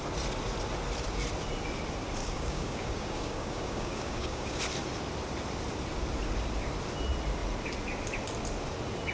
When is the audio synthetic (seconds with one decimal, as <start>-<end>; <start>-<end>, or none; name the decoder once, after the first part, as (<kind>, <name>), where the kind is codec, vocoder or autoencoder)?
2.2-4.6 (codec, DAC)